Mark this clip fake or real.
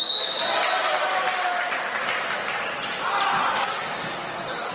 real